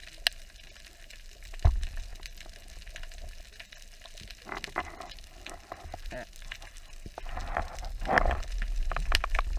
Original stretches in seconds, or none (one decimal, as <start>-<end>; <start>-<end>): 0.0-7.4; 8.2-9.6